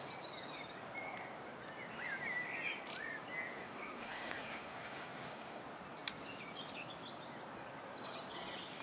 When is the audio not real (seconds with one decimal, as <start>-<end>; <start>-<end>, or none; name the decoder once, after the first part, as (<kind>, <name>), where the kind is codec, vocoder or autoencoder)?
3.6-5.6 (codec, SNAC)